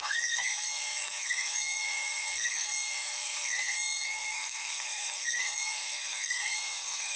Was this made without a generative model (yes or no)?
no